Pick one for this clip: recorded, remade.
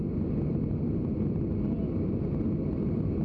recorded